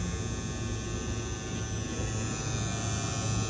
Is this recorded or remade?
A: recorded